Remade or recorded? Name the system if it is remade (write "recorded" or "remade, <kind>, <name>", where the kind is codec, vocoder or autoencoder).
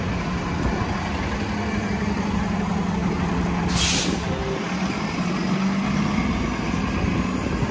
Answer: recorded